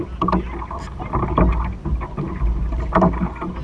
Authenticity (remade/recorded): recorded